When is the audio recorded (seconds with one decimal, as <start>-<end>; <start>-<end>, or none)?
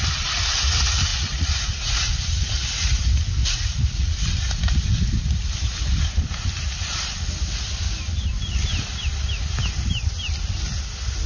0.0-1.1; 2.1-3.4; 4.1-11.3